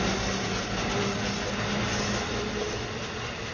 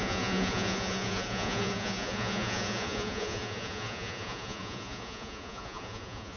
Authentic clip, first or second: first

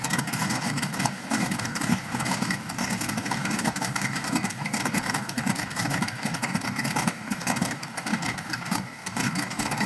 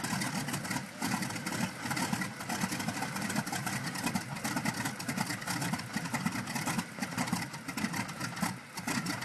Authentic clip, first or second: second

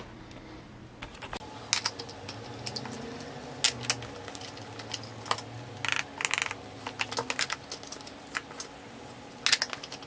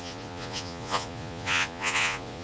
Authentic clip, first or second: first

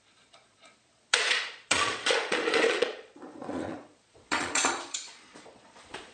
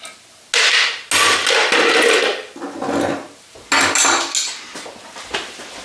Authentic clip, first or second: second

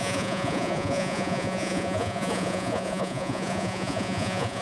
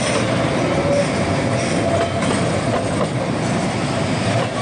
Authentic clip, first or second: second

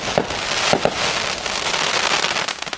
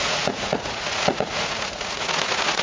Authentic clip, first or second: first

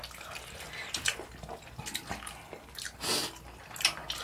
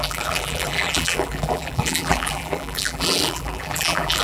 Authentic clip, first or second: first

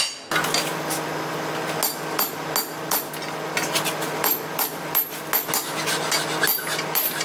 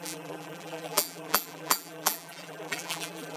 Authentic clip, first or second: first